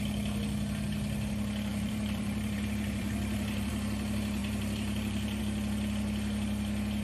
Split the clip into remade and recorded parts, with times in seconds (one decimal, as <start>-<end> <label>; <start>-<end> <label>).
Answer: 0.0-1.7 recorded; 1.7-3.7 remade; 3.7-4.4 recorded; 4.4-5.4 remade; 5.4-7.0 recorded